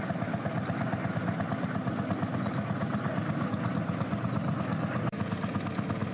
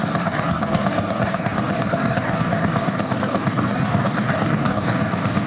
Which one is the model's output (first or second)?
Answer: second